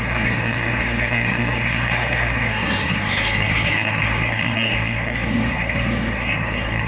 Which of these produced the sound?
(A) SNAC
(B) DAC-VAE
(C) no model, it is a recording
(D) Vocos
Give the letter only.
A